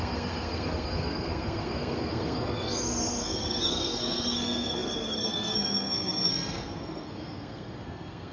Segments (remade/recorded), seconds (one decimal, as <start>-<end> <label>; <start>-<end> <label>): 0.0-8.3 remade